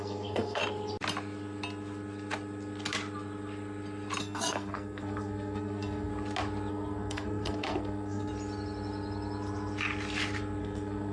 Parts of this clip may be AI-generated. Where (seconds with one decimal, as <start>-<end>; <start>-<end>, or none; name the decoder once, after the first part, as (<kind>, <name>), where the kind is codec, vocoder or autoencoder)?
0.0-0.6 (codec, SNAC); 4.2-6.1; 6.7-8.3; 10.6-11.1

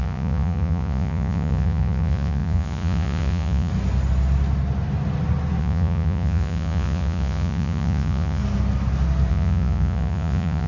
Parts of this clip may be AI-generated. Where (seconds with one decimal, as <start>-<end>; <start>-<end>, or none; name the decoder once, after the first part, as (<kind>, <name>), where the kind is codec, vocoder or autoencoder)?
0.0-3.7 (vocoder, Vocos); 5.6-8.4; 9.3-10.7

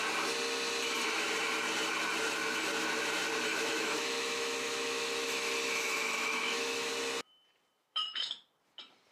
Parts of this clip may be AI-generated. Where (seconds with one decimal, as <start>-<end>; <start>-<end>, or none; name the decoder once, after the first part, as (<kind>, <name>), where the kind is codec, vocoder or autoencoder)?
3.5-6.9 (autoencoder, DAC-VAE); 7.8-8.3

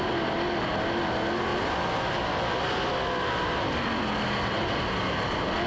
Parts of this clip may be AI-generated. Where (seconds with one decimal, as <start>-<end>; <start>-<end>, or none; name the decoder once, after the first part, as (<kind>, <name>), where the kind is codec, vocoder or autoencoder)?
none

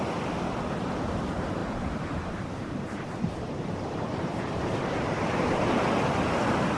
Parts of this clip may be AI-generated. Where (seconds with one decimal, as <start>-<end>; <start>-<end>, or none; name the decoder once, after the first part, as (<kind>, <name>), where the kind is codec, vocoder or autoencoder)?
1.6-5.7 (vocoder, BigVGAN v2)